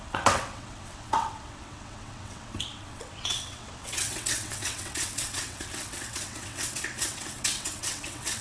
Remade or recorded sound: remade